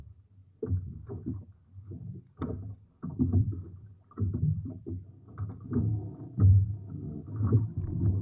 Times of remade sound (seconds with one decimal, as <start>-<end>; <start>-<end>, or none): 0.4-2.2; 3.1-4.8